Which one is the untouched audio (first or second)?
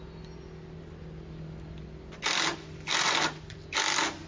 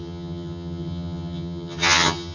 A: first